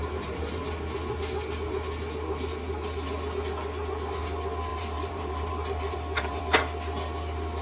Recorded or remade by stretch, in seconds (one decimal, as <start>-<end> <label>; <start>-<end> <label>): 0.0-0.6 remade; 0.6-4.7 recorded; 4.7-6.4 remade; 6.4-7.6 recorded